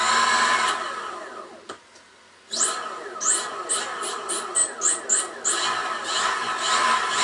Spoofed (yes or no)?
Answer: no